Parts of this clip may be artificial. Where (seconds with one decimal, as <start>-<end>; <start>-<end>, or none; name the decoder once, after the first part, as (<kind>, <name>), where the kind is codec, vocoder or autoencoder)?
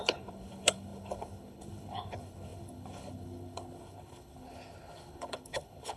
0.0-6.0 (codec, HILCodec)